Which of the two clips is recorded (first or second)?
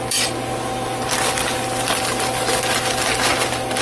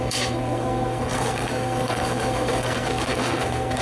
first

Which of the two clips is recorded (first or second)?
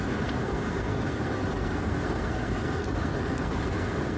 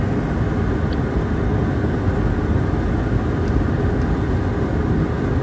second